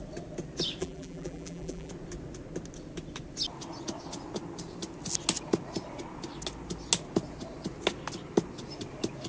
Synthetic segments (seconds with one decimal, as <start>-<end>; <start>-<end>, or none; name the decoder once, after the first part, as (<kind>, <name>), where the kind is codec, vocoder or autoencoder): 0.8-1.9 (vocoder, BigVGAN v2)